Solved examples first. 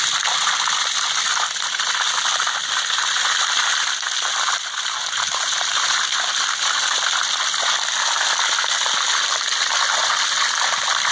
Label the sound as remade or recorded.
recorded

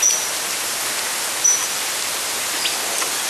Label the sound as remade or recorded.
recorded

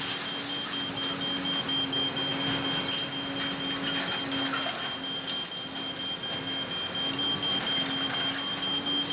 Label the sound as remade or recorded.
recorded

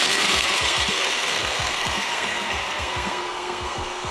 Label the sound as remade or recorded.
remade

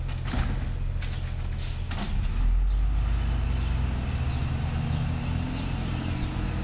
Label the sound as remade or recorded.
recorded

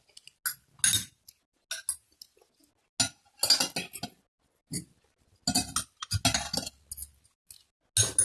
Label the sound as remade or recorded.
recorded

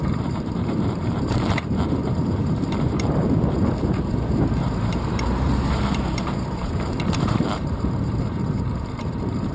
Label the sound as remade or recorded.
remade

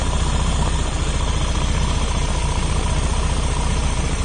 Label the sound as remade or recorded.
recorded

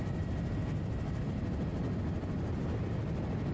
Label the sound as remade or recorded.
recorded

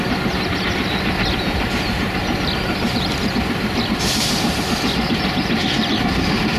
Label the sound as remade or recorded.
recorded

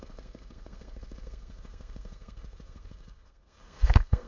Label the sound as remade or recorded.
remade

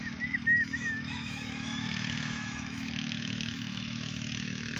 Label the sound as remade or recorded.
remade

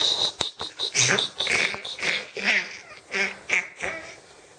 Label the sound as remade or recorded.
recorded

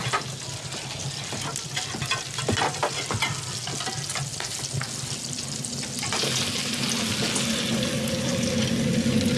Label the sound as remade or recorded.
recorded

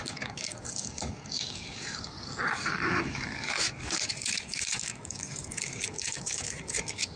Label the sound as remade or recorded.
remade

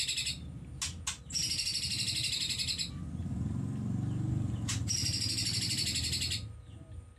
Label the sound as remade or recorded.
recorded